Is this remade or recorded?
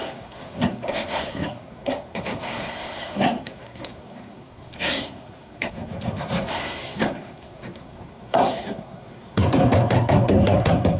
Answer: remade